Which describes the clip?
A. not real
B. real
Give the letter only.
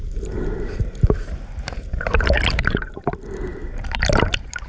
A